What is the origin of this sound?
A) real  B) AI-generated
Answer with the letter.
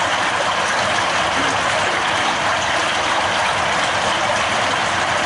A